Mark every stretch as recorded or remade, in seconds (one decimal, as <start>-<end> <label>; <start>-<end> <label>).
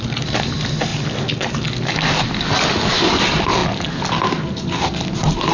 0.0-5.5 recorded